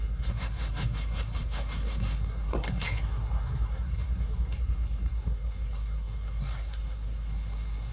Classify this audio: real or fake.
fake